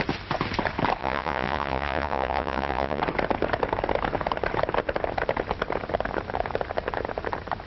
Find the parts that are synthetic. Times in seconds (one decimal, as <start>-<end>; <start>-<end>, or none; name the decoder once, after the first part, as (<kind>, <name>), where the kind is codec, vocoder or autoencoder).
1.0-3.0 (vocoder, Vocos)